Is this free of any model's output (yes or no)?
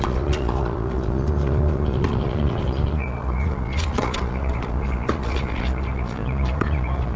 no